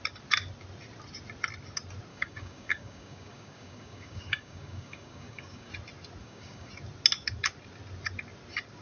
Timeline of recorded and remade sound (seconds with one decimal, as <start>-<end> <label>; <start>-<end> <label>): 0.0-2.1 recorded; 2.1-5.7 remade; 5.7-6.2 recorded; 6.2-6.7 remade; 6.7-8.8 recorded